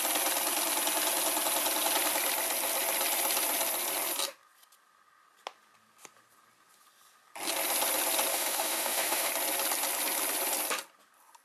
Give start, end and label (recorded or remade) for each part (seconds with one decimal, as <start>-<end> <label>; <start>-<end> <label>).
0.0-8.3 recorded; 8.3-9.3 remade; 9.3-11.4 recorded